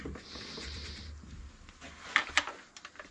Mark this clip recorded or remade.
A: recorded